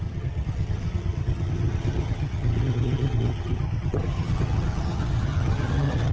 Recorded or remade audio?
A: remade